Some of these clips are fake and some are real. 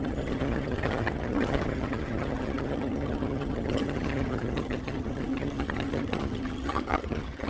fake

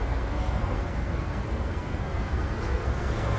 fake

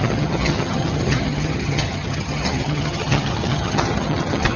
fake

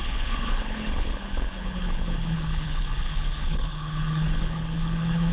fake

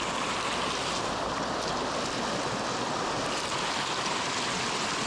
real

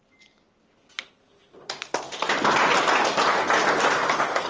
real